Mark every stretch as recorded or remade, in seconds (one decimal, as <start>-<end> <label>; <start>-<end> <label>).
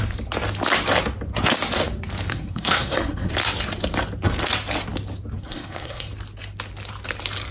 0.0-2.3 recorded; 2.3-3.3 remade; 3.3-5.4 recorded; 5.4-6.1 remade; 6.1-7.5 recorded